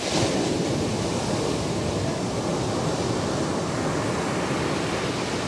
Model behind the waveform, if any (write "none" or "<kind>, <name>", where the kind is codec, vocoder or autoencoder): none